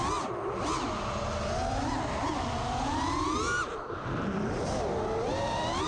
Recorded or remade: recorded